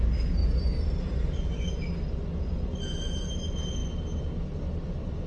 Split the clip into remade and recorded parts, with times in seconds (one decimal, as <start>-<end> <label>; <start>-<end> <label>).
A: 0.0-5.3 recorded